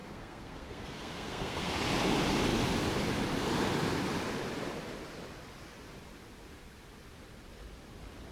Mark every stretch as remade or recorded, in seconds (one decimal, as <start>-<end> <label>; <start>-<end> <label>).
0.0-1.7 remade; 1.7-8.3 recorded